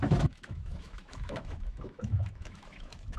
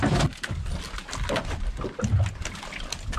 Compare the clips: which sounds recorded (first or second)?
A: second